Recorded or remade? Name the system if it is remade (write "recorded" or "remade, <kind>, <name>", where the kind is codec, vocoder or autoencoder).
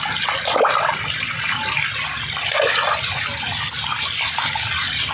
recorded